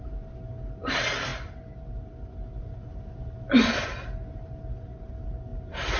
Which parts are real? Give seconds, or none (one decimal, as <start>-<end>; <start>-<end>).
0.0-6.0

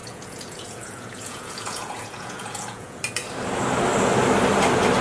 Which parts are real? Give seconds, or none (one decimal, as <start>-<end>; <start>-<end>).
3.0-5.0

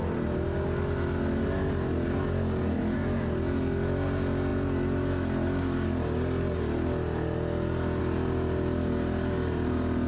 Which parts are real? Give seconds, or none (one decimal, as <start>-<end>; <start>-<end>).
0.0-10.1

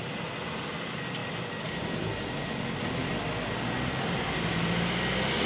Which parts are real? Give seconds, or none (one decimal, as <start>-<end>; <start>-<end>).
0.0-5.5

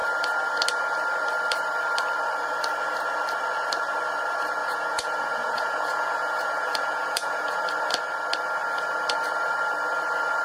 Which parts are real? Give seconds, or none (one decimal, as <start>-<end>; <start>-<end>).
0.0-4.6; 7.6-10.4

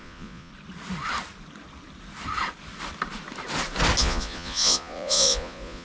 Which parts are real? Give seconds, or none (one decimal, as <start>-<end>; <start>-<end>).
0.5-4.0

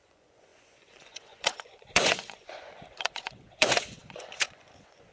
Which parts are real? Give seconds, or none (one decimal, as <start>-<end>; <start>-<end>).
none